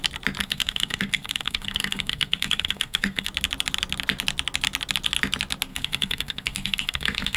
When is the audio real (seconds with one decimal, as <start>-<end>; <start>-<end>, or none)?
0.0-0.4; 3.3-5.7